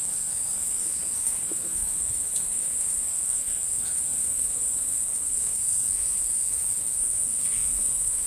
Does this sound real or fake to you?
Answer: fake